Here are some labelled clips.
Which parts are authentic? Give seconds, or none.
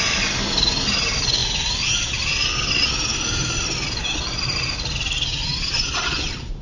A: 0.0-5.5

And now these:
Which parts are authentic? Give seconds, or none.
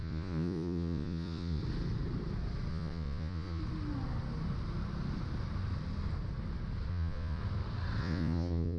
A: 1.6-2.7; 3.6-6.9; 7.4-8.0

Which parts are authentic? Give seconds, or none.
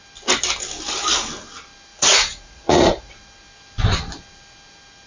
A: 0.0-1.9; 3.1-5.1